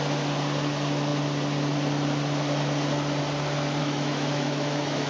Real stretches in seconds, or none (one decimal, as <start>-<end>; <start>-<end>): 0.0-3.8